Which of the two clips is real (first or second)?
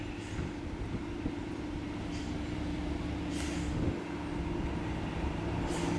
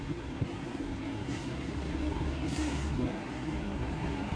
first